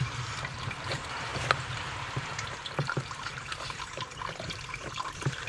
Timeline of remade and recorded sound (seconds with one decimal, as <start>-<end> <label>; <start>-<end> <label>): 0.0-5.5 remade

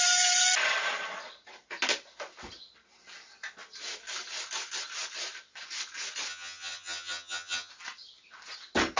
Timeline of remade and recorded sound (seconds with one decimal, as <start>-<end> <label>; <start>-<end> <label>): 0.0-6.3 recorded; 6.3-7.7 remade; 7.7-9.0 recorded

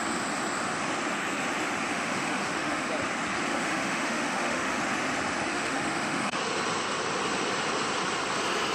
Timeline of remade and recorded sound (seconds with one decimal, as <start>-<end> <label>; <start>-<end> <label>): 0.0-1.9 recorded; 1.9-2.9 remade; 2.9-3.5 recorded; 3.5-4.8 remade; 4.8-5.5 recorded; 5.5-6.4 remade; 6.4-8.7 recorded

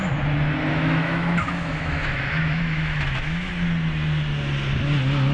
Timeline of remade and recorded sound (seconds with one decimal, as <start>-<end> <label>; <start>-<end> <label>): 0.0-0.7 recorded; 0.7-3.5 remade; 3.5-5.3 recorded

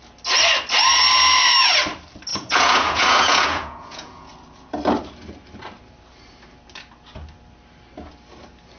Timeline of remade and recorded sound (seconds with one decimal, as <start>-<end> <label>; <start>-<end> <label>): 0.0-2.3 recorded; 2.3-4.3 remade; 4.3-8.8 recorded